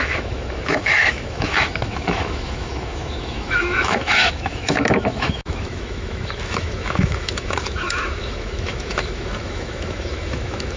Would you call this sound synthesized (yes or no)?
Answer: yes